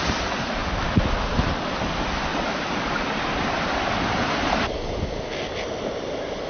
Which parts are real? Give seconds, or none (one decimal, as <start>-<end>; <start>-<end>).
0.0-6.5